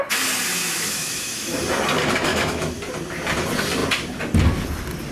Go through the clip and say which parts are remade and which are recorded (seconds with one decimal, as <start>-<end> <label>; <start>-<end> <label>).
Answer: 0.0-0.6 recorded; 0.6-1.6 remade; 1.6-2.3 recorded; 2.3-2.8 remade; 2.8-5.1 recorded